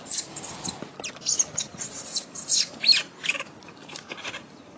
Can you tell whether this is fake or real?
real